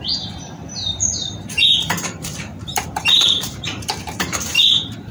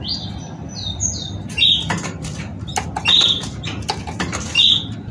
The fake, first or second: first